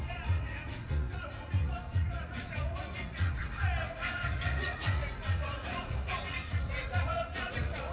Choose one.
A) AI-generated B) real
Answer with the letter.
A